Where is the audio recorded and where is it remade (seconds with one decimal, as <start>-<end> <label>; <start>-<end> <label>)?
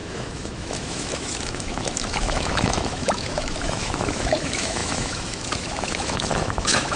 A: 0.0-7.0 remade